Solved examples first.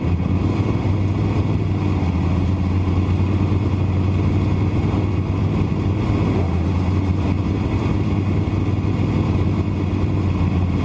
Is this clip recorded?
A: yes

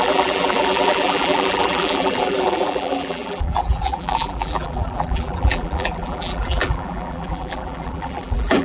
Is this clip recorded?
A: no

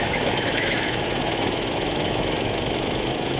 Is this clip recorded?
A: no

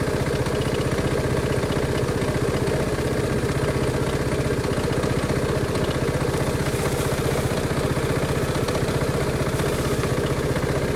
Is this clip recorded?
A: yes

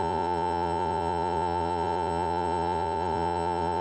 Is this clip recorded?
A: no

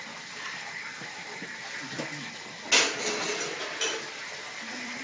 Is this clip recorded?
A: yes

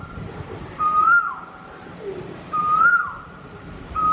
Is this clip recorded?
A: no